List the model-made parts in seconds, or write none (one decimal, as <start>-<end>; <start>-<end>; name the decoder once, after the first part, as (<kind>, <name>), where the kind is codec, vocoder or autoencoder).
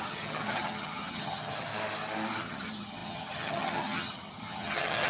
0.0-1.7 (vocoder, HiFi-GAN); 2.4-5.1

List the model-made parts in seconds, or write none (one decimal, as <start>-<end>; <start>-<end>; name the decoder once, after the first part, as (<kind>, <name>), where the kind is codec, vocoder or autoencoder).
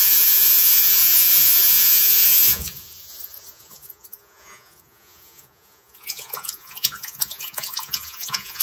0.0-8.6 (vocoder, Vocos)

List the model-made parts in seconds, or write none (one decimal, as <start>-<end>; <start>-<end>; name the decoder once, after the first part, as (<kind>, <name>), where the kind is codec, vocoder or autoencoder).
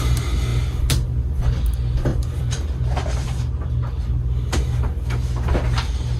2.1-3.4 (vocoder, BigVGAN v2)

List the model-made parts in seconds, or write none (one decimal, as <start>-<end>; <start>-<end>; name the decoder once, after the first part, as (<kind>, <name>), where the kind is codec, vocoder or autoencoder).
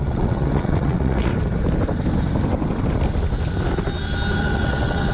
0.0-1.3 (vocoder, WaveNeXt); 4.4-5.1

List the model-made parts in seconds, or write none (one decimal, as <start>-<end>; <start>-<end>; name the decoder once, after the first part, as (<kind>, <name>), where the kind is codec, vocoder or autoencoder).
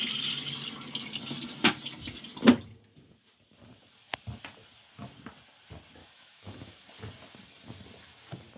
6.0-6.8 (autoencoder, DAC-VAE)